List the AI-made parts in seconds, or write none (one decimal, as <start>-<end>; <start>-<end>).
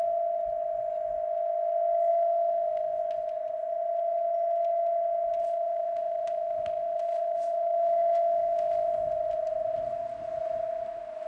2.1-3.0; 5.4-8.9